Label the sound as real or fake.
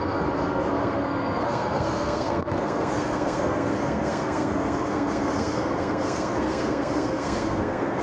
fake